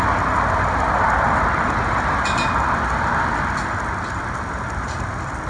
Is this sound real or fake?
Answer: real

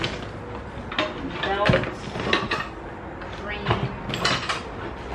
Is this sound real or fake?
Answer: real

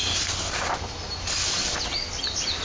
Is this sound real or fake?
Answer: real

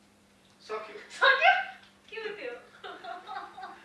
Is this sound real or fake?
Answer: fake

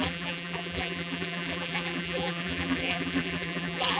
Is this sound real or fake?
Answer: fake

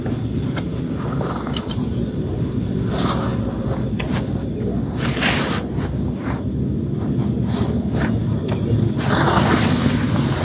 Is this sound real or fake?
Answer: real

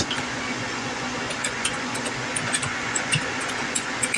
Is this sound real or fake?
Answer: fake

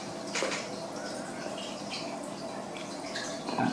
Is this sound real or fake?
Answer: real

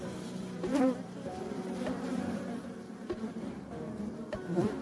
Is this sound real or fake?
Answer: fake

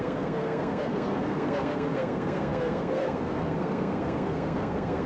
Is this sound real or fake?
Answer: fake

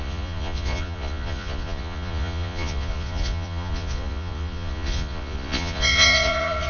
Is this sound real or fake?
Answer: fake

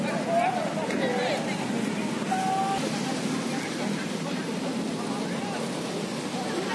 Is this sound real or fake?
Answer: real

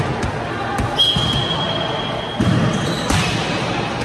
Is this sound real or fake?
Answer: real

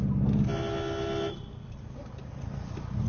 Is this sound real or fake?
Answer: real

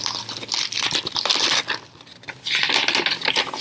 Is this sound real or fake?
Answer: real